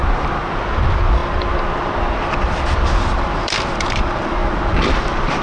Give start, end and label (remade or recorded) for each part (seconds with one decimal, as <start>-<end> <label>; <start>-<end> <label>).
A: 0.0-0.6 recorded; 0.6-4.4 remade; 4.4-5.0 recorded; 5.0-5.4 remade